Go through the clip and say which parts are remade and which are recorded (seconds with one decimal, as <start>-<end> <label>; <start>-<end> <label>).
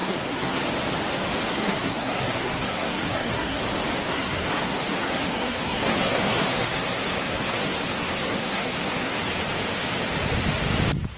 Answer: 0.0-0.6 remade; 0.6-1.5 recorded; 1.5-3.6 remade; 3.6-4.1 recorded; 4.1-9.2 remade; 9.2-11.2 recorded